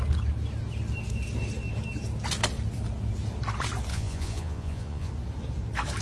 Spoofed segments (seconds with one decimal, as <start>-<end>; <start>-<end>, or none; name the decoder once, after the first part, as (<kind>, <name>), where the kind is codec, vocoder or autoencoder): 3.9-5.1 (vocoder, Vocos)